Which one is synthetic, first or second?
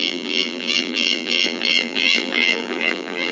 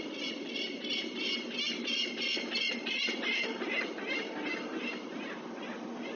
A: first